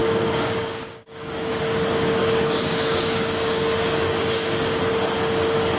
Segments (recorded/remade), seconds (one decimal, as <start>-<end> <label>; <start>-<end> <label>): 0.0-1.6 remade; 1.6-2.2 recorded; 2.2-4.8 remade; 4.8-5.8 recorded

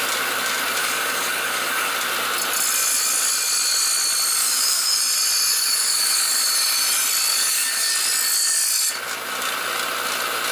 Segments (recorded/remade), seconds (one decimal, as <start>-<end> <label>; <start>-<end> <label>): 0.0-0.8 recorded; 0.8-1.9 remade; 1.9-4.4 recorded; 4.4-5.0 remade; 5.0-5.5 recorded; 5.5-6.3 remade; 6.3-7.3 recorded; 7.3-7.9 remade; 7.9-10.5 recorded

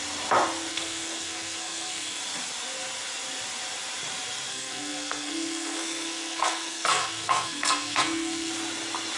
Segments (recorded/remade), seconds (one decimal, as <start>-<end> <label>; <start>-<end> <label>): 0.0-0.7 recorded; 0.7-2.2 remade; 2.2-4.5 recorded; 4.5-8.5 remade; 8.5-9.2 recorded

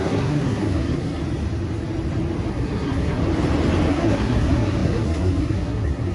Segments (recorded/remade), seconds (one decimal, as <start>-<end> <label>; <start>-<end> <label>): 0.0-1.2 remade; 1.2-2.5 recorded; 2.5-3.2 remade; 3.2-3.9 recorded; 3.9-6.1 remade

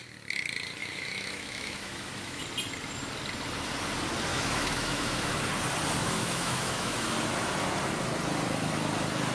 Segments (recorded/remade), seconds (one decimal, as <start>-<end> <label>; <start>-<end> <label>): 0.0-0.8 recorded; 0.8-2.4 remade; 2.4-4.3 recorded; 4.3-5.3 remade; 5.3-6.0 recorded; 6.0-7.1 remade; 7.1-9.3 recorded

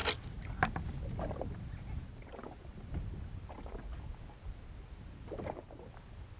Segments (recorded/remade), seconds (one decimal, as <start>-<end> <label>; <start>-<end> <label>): 0.0-6.4 recorded

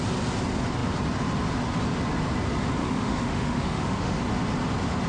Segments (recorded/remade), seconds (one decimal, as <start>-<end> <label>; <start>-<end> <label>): 0.0-2.8 recorded; 2.8-4.2 remade; 4.2-5.1 recorded

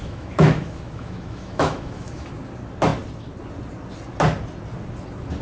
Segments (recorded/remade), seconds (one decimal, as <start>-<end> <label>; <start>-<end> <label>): 0.0-2.3 remade; 2.3-5.4 recorded